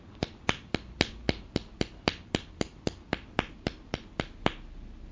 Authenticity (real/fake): real